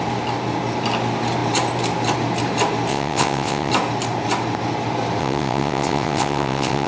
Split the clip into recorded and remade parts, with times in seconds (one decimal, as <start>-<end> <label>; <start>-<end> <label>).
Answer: 0.0-2.9 recorded; 2.9-3.7 remade; 3.7-5.2 recorded; 5.2-6.9 remade